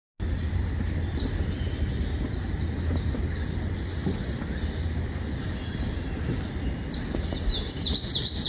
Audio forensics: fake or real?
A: real